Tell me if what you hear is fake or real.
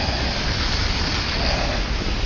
real